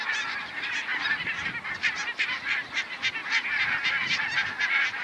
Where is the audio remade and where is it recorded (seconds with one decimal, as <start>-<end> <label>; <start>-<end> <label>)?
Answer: 0.0-5.0 recorded